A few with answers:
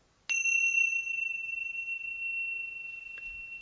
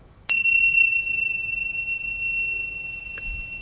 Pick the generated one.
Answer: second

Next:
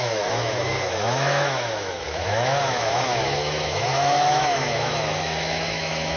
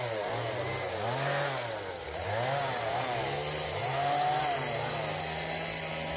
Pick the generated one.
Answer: first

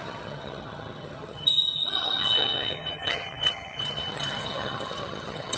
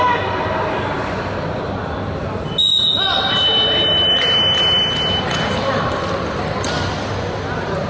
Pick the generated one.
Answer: first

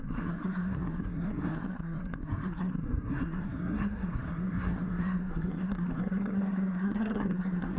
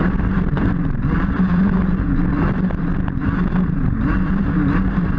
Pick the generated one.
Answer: first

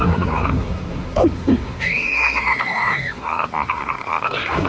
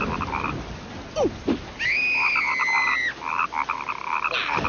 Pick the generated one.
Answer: first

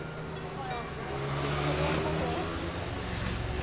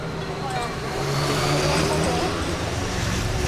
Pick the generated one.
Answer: second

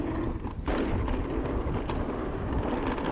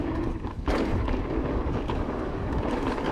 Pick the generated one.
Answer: second